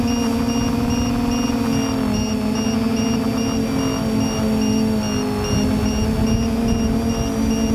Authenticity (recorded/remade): recorded